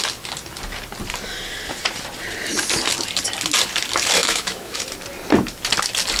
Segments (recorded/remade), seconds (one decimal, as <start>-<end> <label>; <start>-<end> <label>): 0.0-4.2 recorded; 4.2-4.8 remade; 4.8-6.2 recorded